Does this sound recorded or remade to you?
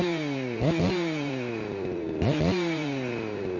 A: remade